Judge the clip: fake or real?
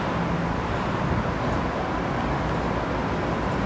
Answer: real